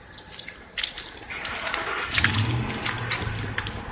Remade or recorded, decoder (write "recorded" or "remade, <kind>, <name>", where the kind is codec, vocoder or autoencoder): recorded